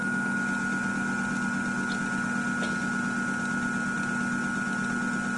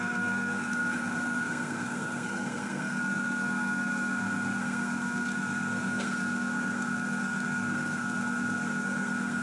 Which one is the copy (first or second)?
second